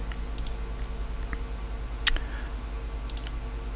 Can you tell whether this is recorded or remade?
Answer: recorded